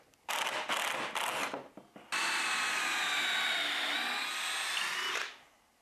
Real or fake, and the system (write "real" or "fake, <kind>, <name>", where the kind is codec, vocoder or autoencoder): real